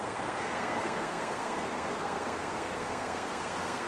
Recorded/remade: remade